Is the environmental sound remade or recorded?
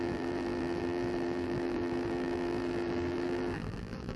remade